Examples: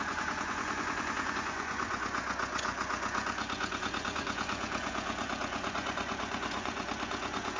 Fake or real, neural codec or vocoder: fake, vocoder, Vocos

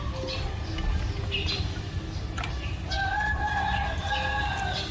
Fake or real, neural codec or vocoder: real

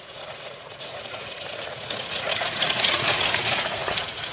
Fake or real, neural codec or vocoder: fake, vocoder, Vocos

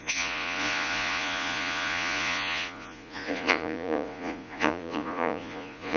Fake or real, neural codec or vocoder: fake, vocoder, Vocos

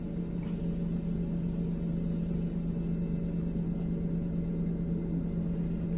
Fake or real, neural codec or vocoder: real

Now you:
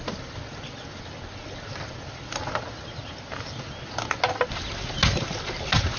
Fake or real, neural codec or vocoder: real